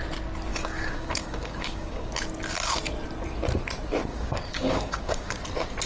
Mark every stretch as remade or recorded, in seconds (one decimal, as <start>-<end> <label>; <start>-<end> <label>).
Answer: 0.0-0.5 recorded; 0.5-2.1 remade; 2.1-4.1 recorded; 4.1-5.4 remade; 5.4-5.9 recorded